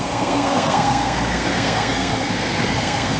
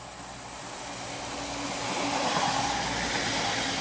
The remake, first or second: first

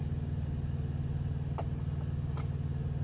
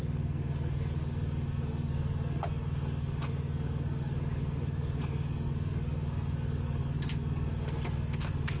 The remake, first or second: second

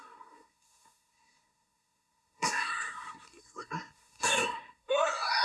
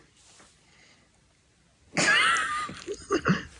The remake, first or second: first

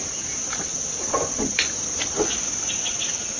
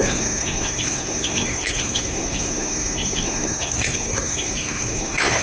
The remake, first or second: second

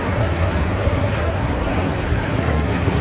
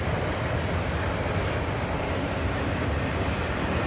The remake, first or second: first